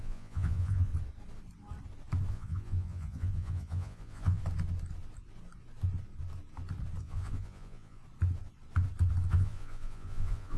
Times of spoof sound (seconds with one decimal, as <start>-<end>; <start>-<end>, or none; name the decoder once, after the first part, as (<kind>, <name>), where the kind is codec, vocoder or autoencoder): 0.0-0.9 (vocoder, Vocos); 2.3-4.4; 7.0-8.0; 9.3-10.6